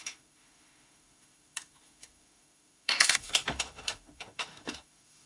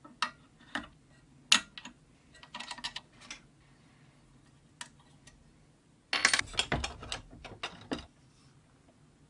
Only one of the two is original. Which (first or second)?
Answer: second